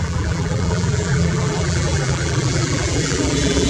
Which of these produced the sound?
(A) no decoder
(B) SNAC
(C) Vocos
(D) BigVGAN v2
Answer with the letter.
D